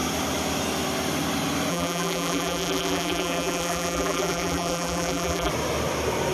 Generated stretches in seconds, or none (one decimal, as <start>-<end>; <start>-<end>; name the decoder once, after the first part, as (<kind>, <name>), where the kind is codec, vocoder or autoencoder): 1.7-5.5 (vocoder, BigVGAN v2)